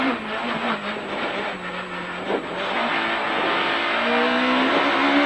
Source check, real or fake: real